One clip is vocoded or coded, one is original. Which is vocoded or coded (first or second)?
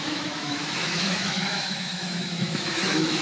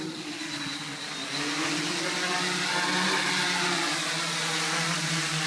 first